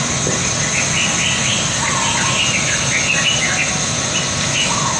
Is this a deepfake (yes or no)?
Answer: no